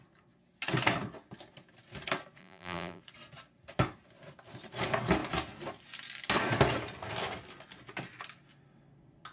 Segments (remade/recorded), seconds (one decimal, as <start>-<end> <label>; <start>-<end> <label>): 0.0-2.4 recorded; 2.4-3.0 remade; 3.0-9.3 recorded

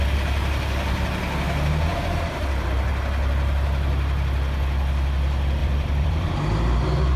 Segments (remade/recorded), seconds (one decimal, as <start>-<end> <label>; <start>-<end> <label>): 0.0-1.9 recorded; 1.9-2.9 remade; 2.9-5.6 recorded; 5.6-6.3 remade; 6.3-7.2 recorded